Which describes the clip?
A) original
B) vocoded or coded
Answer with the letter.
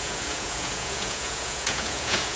B